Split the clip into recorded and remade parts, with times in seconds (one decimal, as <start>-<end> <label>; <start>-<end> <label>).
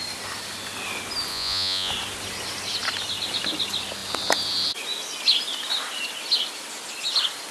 0.0-1.3 recorded; 1.3-1.9 remade; 1.9-7.5 recorded